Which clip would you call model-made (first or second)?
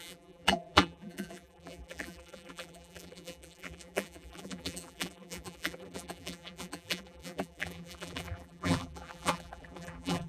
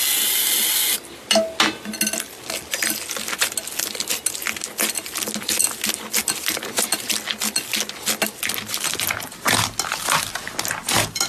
first